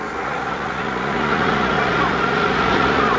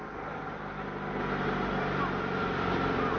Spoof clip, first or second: first